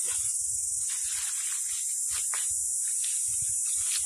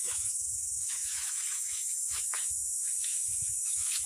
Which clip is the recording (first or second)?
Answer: first